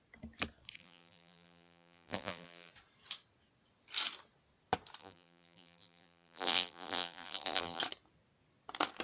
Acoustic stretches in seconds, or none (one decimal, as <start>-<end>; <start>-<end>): 0.0-0.8; 2.7-5.0; 7.8-9.0